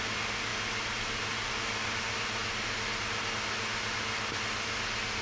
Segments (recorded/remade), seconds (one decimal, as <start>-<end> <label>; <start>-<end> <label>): 0.0-0.5 recorded; 0.5-1.5 remade; 1.5-5.2 recorded

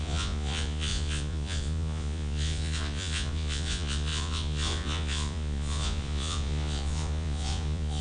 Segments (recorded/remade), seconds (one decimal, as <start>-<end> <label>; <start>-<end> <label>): 0.0-8.0 remade

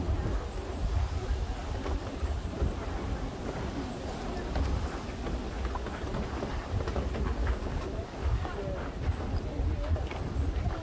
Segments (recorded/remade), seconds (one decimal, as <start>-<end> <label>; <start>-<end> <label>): 0.0-7.4 recorded; 7.4-8.5 remade; 8.5-10.8 recorded